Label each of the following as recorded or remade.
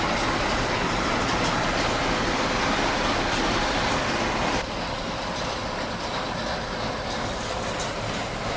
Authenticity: recorded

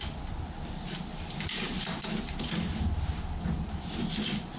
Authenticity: recorded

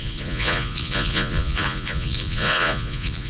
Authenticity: remade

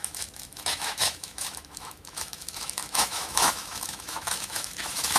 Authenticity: remade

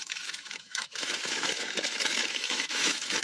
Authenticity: remade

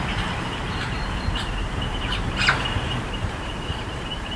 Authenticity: remade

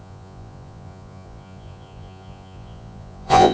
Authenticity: remade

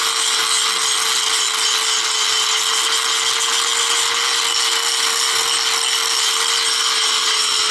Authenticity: recorded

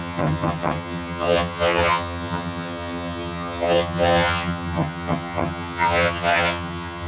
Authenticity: remade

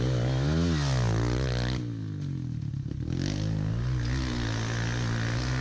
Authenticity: recorded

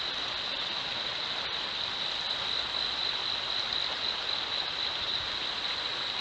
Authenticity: recorded